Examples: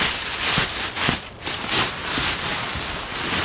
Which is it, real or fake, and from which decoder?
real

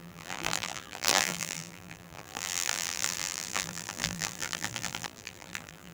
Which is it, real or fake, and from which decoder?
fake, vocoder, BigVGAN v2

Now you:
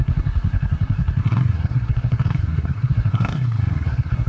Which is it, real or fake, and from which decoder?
fake, codec, SNAC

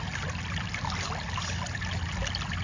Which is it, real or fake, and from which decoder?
real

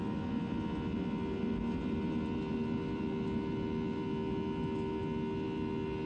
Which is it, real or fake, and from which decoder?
real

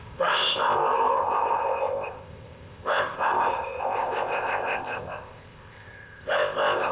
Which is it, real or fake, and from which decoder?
fake, codec, ZipCodec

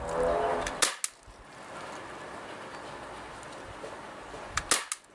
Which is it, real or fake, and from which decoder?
real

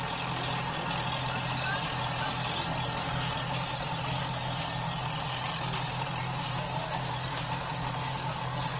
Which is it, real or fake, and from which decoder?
real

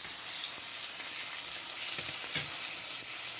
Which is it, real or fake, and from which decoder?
real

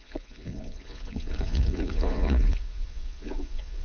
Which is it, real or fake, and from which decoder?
fake, vocoder, Vocos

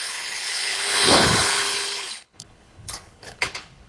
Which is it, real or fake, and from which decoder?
fake, codec, HILCodec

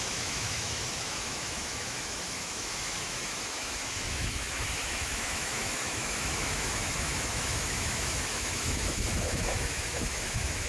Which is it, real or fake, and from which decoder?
fake, autoencoder, DAC-VAE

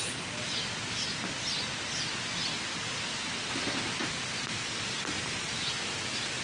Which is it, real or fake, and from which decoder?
real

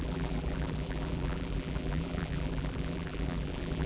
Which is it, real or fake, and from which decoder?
fake, vocoder, BigVGAN v2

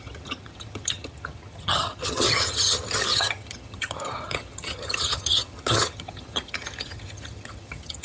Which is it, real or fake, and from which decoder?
fake, vocoder, HiFi-GAN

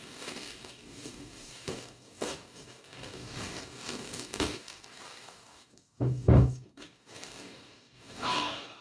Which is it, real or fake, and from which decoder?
fake, codec, DAC